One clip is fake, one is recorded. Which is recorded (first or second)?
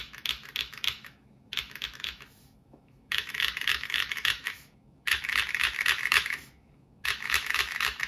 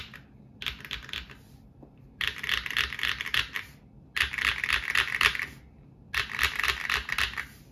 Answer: second